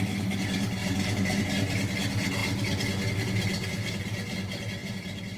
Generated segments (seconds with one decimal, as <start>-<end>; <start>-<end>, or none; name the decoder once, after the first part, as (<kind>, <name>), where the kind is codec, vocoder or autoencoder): 0.8-1.4 (vocoder, BigVGAN v2); 3.7-4.2; 4.8-5.4